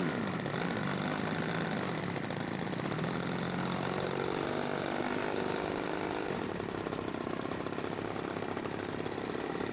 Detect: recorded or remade recorded